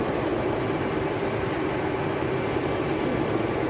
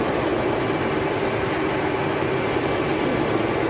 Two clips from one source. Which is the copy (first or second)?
first